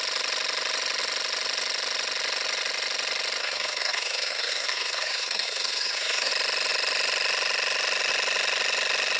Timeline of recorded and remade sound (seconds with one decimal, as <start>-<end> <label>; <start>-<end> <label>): 0.0-3.4 recorded; 3.4-6.3 remade; 6.3-9.2 recorded